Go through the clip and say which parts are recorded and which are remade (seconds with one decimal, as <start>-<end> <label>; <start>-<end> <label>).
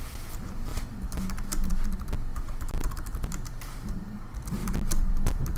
0.0-2.3 recorded; 2.3-3.9 remade; 3.9-4.6 recorded; 4.6-5.6 remade